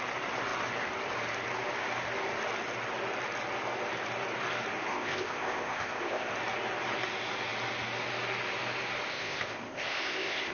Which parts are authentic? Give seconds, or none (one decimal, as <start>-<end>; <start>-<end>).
0.0-4.9; 6.3-9.1